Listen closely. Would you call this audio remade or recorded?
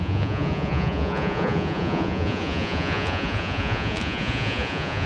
remade